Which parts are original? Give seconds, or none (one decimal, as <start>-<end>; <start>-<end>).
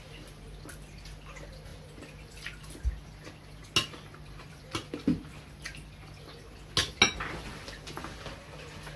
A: 0.0-9.0